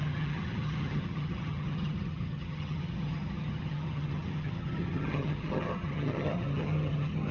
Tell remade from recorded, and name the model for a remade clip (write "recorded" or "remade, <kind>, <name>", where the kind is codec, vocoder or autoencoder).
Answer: remade, vocoder, HiFi-GAN